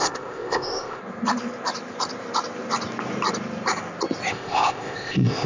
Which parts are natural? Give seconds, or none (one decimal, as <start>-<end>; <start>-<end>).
1.0-4.3